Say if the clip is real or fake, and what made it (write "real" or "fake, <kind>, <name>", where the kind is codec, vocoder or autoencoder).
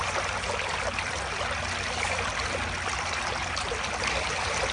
real